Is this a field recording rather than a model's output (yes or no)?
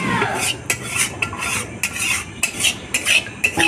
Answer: yes